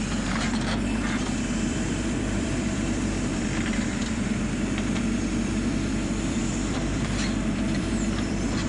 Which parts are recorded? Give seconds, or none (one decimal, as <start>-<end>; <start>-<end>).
none